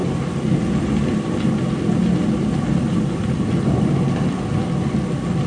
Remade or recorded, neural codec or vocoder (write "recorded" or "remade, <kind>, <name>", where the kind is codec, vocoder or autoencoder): recorded